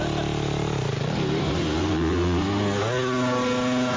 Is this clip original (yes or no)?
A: yes